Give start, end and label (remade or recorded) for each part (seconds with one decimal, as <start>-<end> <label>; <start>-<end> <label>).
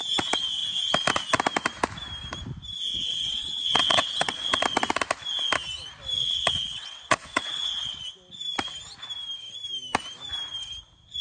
0.0-2.9 recorded; 2.9-4.6 remade; 4.6-6.2 recorded; 6.2-8.0 remade; 8.0-11.2 recorded